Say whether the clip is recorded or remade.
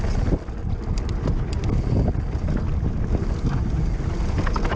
recorded